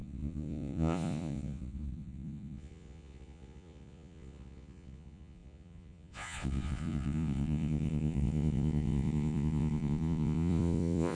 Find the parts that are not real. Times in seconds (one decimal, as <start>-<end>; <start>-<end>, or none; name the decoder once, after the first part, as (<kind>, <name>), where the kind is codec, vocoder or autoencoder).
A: 0.0-11.1 (vocoder, Vocos)